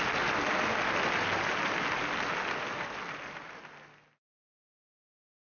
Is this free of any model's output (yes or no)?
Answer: yes